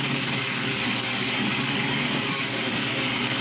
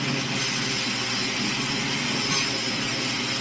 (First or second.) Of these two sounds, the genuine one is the second